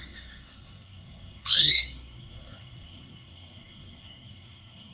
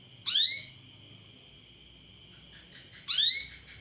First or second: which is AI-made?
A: first